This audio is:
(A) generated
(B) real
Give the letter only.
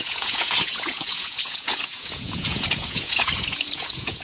A